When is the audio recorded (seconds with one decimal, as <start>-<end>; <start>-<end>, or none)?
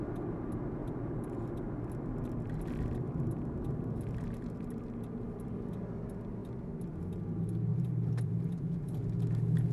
0.0-0.8; 1.6-7.7; 8.5-9.7